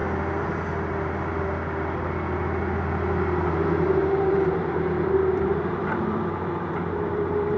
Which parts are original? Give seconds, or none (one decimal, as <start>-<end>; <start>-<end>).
0.0-4.0